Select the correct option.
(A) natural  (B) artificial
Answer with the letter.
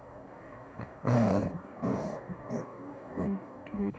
B